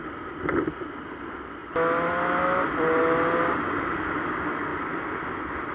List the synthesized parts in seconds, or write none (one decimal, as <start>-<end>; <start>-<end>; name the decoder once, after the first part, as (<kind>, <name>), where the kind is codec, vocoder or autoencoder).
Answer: none